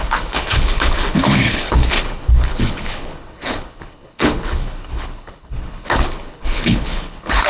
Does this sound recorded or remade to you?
remade